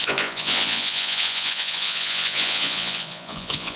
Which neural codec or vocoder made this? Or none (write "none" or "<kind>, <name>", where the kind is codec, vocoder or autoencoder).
vocoder, Vocos